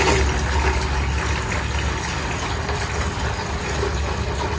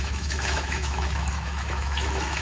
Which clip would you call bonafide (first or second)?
first